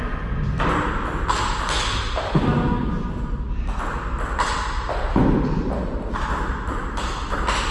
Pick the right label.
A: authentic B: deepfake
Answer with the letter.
A